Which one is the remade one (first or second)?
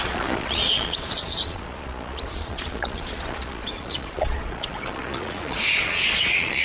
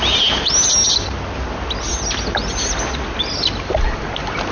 first